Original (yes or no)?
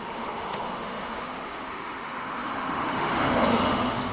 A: no